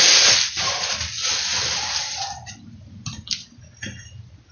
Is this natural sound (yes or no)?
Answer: yes